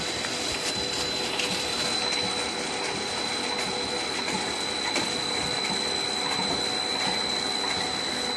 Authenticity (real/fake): real